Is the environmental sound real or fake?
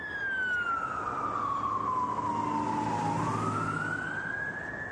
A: real